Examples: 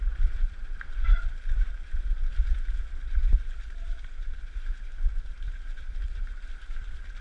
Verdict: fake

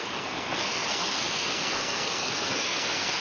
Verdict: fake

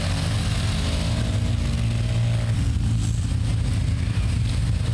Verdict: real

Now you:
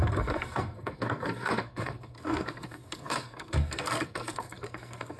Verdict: fake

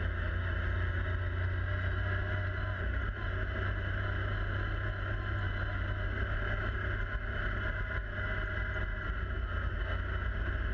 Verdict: real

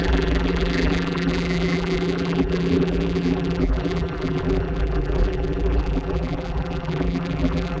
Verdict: fake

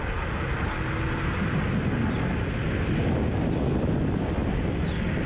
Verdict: real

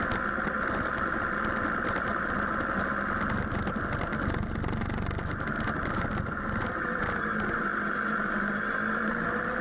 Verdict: real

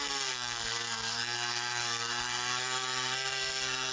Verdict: fake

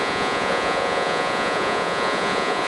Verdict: fake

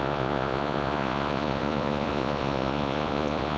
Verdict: fake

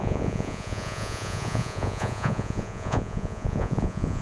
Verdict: fake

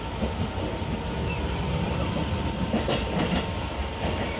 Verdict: real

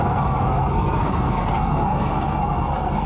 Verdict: fake